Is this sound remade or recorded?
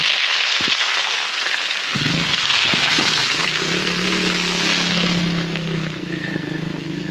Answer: remade